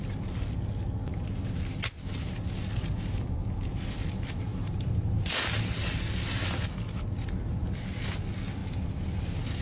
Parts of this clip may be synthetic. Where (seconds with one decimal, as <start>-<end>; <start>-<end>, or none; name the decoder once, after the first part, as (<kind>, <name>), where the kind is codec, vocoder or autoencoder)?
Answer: none